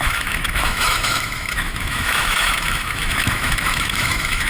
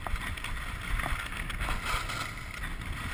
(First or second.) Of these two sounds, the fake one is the first